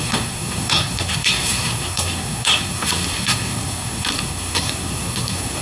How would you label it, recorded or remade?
remade